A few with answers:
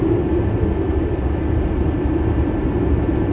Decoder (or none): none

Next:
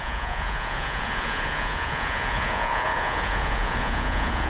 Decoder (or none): vocoder, Vocos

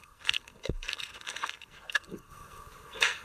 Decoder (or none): codec, SNAC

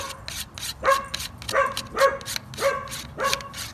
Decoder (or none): none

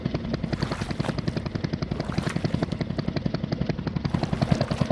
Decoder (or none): none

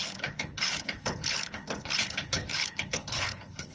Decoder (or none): codec, HILCodec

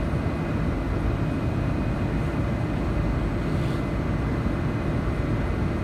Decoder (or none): none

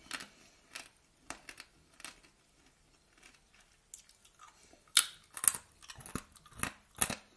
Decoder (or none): none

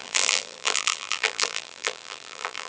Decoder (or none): vocoder, BigVGAN v2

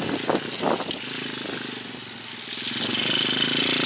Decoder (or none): none